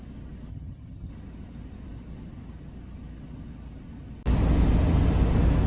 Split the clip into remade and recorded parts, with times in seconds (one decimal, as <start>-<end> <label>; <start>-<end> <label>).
0.0-0.5 recorded; 0.5-1.1 remade; 1.1-5.7 recorded